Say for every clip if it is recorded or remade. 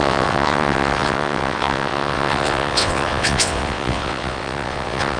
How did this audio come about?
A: remade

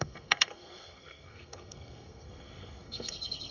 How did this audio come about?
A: remade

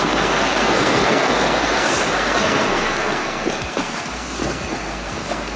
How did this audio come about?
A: remade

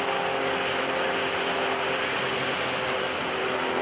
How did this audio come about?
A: recorded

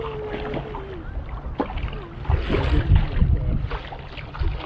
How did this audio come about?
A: recorded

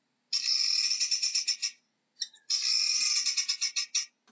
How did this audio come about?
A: recorded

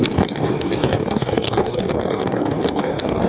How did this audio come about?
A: remade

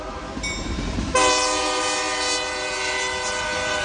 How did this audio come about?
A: remade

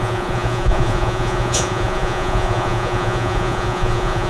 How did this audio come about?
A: remade